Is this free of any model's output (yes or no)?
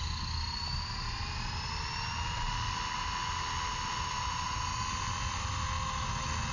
yes